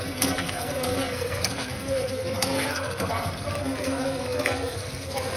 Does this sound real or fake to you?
fake